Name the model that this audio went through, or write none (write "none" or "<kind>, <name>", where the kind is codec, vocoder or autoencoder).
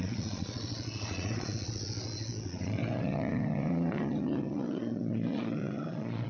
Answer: vocoder, Vocos